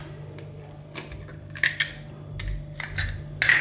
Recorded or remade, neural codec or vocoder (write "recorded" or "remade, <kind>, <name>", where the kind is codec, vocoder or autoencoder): recorded